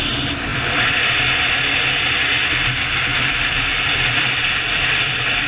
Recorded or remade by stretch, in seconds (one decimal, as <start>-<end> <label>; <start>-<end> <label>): 0.0-0.5 recorded; 0.5-1.3 remade; 1.3-3.1 recorded; 3.1-5.5 remade